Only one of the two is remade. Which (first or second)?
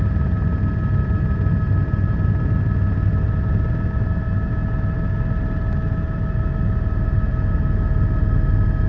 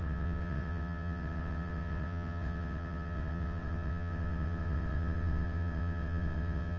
second